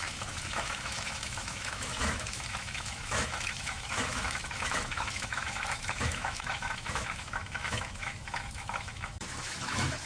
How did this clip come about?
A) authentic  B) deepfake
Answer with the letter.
B